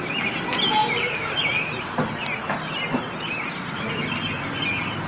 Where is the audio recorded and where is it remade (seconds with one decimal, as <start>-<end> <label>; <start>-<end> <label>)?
0.0-5.1 recorded